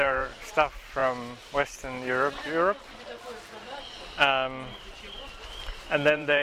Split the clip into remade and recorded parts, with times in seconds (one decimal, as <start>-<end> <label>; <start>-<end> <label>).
0.0-1.0 remade; 1.0-4.8 recorded; 4.8-6.4 remade